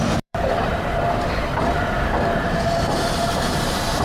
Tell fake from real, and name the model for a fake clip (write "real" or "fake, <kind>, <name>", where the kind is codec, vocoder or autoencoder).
fake, vocoder, BigVGAN v2